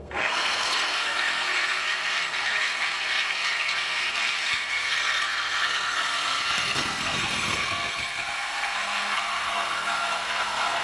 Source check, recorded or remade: remade